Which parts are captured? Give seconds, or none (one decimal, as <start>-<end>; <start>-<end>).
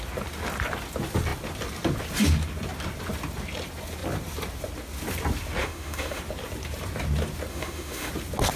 0.0-5.6; 6.2-7.5; 8.1-8.6